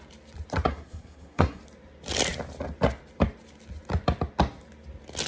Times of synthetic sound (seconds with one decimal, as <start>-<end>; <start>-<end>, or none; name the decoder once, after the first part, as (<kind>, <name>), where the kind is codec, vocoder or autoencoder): 0.7-1.6 (codec, SNAC)